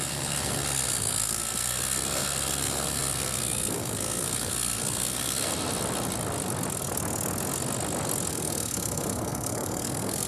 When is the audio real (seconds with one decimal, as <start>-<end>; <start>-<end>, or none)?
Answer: 5.5-8.3